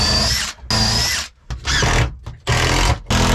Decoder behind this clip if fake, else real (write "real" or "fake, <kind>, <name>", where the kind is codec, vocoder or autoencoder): real